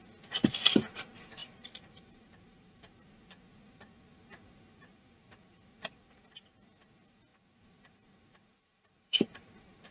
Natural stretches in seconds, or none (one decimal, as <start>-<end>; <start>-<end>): 0.0-1.4; 3.1-4.2; 6.3-7.3